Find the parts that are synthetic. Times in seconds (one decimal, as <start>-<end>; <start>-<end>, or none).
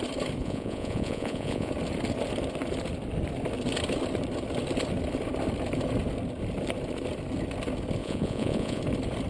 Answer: 0.4-1.7; 8.0-8.8